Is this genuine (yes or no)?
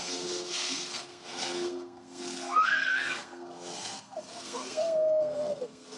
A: no